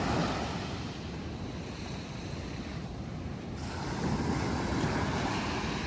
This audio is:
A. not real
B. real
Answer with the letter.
B